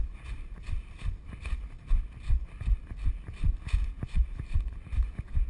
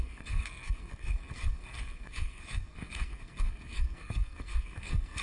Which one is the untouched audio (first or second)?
first